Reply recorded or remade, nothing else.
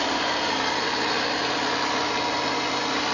recorded